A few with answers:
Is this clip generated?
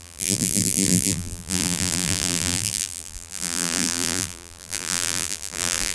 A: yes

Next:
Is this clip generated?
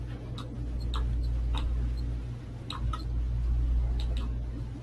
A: no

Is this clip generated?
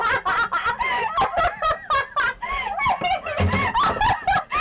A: no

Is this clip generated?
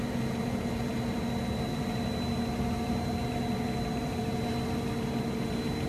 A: yes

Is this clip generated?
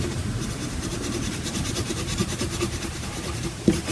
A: yes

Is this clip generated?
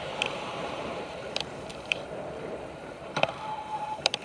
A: yes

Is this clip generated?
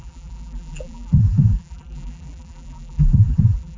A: yes